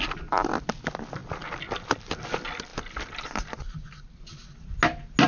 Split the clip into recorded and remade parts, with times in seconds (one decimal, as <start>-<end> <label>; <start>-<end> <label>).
0.0-5.3 recorded